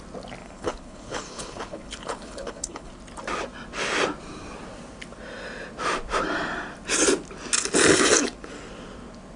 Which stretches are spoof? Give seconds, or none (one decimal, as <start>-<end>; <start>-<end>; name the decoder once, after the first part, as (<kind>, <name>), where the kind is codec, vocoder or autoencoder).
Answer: 0.4-2.9 (codec, HILCodec)